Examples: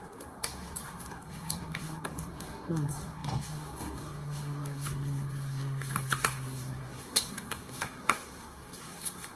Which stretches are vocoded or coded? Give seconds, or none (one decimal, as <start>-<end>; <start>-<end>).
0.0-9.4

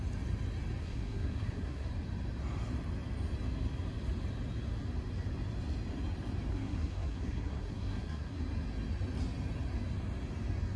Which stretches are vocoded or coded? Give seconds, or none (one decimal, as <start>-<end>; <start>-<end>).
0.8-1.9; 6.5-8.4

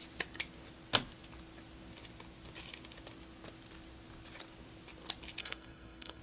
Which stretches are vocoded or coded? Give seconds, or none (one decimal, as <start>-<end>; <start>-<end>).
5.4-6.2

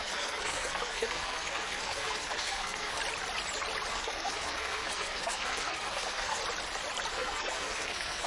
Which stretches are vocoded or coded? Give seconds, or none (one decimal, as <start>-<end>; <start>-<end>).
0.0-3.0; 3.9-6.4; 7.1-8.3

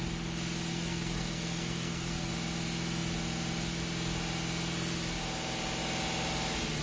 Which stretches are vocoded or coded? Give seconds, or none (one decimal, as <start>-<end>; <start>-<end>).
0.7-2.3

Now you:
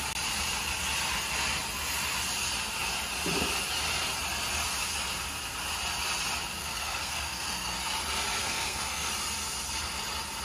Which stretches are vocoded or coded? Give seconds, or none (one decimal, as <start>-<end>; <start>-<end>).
6.6-7.8; 8.4-9.1

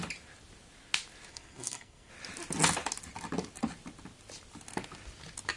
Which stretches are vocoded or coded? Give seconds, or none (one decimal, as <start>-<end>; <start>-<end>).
1.3-2.1

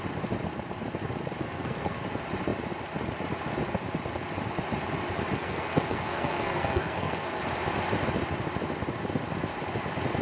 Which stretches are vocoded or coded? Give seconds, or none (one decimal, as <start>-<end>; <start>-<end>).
1.4-2.0; 5.4-7.4